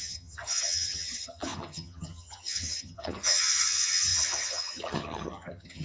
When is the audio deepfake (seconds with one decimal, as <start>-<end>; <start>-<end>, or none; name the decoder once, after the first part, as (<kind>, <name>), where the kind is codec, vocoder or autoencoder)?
0.0-5.8 (vocoder, HiFi-GAN)